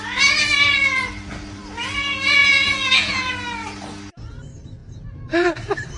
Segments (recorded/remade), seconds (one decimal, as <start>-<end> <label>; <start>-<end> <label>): 0.0-2.4 recorded; 2.4-3.3 remade; 3.3-6.0 recorded